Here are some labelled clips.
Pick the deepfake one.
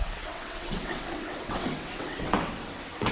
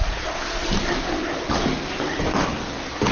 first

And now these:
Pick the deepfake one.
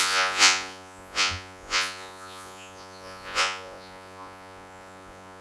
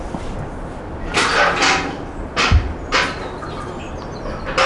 first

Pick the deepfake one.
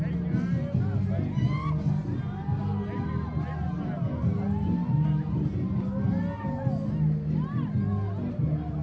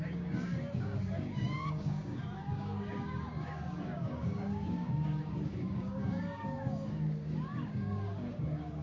second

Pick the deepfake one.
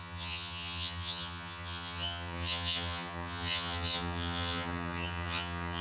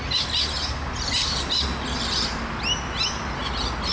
first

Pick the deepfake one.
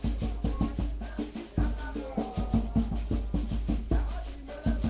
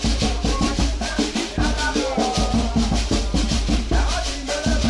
second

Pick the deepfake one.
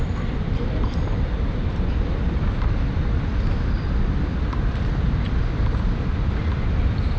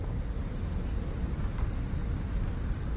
first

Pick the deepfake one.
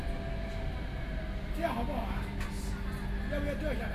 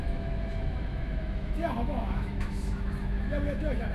second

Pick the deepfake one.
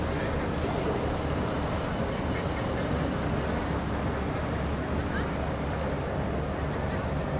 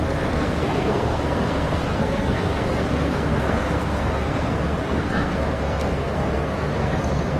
second